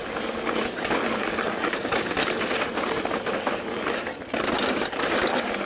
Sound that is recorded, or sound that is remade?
recorded